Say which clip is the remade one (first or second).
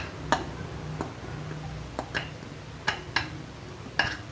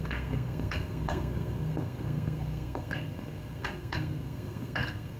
second